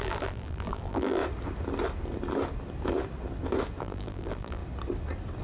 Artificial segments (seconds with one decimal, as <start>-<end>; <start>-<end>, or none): 0.0-1.2; 3.8-4.6